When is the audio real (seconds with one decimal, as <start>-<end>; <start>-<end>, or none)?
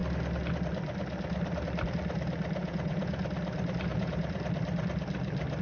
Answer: 0.0-2.6; 3.2-3.9; 4.4-5.6